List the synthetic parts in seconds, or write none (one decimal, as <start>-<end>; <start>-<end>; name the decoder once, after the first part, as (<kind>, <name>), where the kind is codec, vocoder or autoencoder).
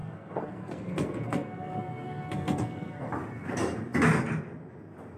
0.0-3.1 (codec, SNAC)